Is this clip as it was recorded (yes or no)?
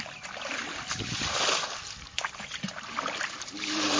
no